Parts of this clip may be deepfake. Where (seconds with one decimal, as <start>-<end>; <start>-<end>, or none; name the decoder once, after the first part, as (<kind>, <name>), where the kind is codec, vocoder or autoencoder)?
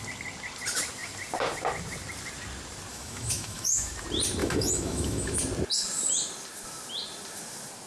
2.9-3.9 (autoencoder, DAC-VAE); 4.4-5.4